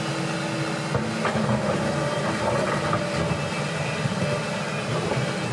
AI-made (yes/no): no